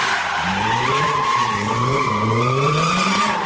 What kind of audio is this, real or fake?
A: fake